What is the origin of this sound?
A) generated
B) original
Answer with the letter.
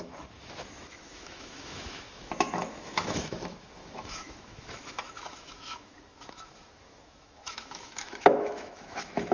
A